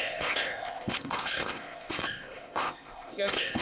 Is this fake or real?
fake